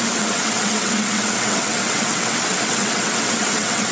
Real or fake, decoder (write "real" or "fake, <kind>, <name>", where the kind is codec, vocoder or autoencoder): fake, vocoder, WaveNeXt